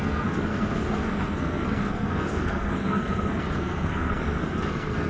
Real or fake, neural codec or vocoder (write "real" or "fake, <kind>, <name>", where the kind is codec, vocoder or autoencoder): fake, codec, SNAC